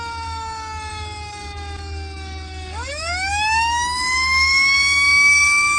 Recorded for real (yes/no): no